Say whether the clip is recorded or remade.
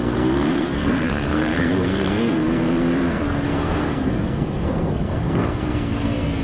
remade